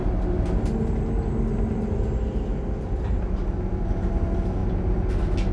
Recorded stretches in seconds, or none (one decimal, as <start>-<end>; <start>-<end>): 0.0-5.5